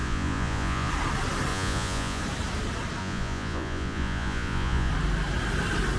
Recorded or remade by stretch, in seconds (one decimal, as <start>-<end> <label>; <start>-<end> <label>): 0.0-0.9 remade; 0.9-1.5 recorded; 1.5-2.2 remade; 2.2-3.0 recorded; 3.0-4.9 remade; 4.9-6.0 recorded